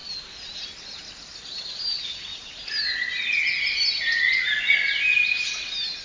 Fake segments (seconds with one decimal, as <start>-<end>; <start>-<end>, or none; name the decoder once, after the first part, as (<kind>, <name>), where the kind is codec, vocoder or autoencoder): none